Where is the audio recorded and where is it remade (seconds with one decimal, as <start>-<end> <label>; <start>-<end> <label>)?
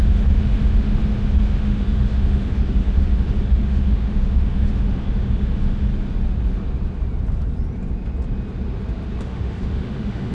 0.0-5.9 remade; 5.9-9.2 recorded; 9.2-10.3 remade